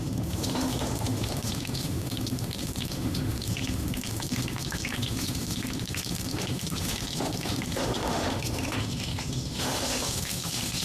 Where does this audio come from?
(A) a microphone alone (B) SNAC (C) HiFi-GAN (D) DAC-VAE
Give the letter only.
D